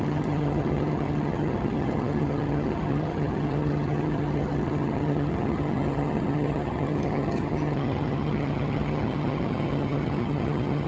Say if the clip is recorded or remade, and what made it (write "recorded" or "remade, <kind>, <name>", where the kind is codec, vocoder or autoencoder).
remade, vocoder, HiFi-GAN